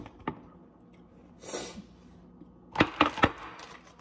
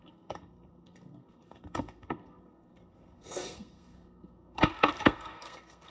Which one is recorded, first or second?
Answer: first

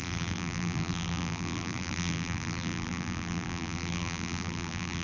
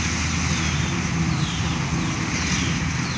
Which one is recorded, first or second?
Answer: second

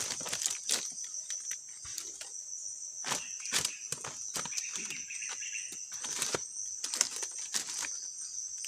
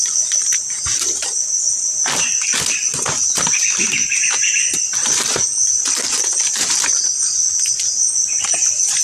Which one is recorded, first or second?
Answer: first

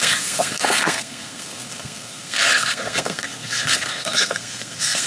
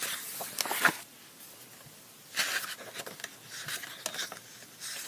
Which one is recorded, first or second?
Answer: second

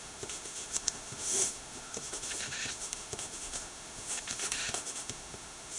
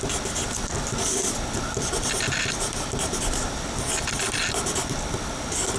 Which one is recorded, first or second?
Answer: second